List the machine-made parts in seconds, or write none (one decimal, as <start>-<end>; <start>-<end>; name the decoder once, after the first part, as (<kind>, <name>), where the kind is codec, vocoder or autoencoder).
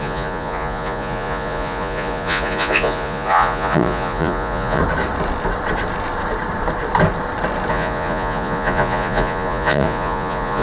0.0-4.8 (vocoder, Vocos); 7.7-10.6